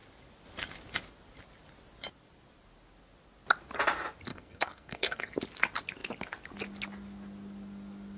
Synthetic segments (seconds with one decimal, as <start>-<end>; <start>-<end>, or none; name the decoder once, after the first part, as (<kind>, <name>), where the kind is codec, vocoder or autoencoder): 4.3-5.3 (codec, SNAC)